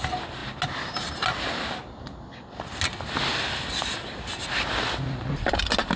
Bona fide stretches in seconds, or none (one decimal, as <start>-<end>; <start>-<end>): 0.0-6.0